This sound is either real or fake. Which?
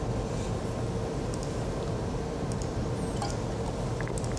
real